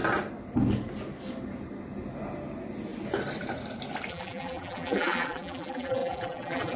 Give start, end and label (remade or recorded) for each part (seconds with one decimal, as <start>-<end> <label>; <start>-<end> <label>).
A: 0.0-4.1 recorded; 4.1-6.8 remade